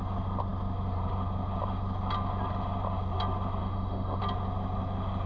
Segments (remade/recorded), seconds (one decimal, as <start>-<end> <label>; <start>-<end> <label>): 0.0-3.6 recorded; 3.6-4.2 remade; 4.2-5.3 recorded